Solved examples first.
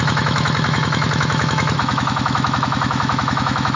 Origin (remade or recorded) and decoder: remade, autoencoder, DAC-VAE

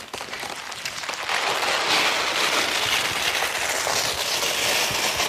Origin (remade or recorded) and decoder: recorded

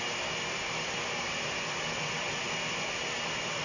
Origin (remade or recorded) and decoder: recorded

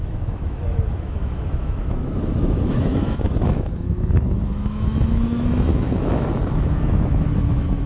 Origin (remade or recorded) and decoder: remade, autoencoder, DAC-VAE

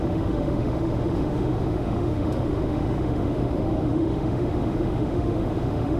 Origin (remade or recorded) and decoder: remade, autoencoder, DAC-VAE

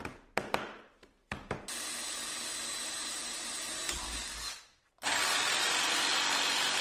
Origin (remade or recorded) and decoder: recorded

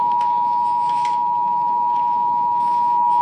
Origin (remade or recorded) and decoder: remade, autoencoder, DAC-VAE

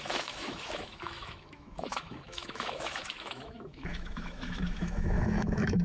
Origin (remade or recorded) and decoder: remade, autoencoder, DAC-VAE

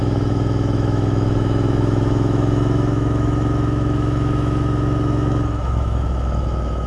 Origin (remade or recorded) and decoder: remade, autoencoder, DAC-VAE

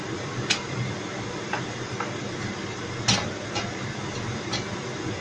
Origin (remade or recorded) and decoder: recorded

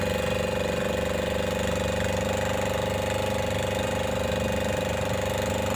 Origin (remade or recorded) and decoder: recorded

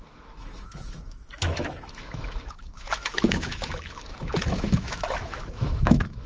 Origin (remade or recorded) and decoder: remade, autoencoder, DAC-VAE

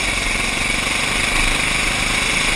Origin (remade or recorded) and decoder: recorded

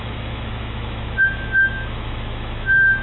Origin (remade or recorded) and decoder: remade, autoencoder, DAC-VAE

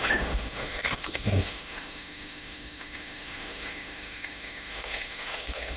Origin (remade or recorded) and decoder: remade, autoencoder, DAC-VAE